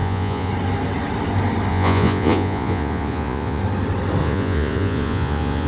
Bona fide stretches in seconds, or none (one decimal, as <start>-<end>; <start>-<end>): 0.5-1.7; 3.6-4.2